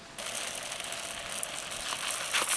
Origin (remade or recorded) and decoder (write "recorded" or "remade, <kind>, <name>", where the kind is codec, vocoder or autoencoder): recorded